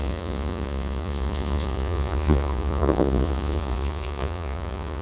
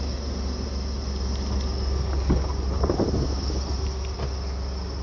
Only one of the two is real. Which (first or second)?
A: second